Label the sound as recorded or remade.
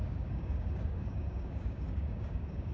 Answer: remade